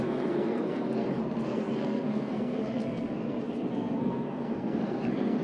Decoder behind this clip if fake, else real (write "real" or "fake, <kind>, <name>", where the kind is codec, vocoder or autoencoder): fake, codec, SNAC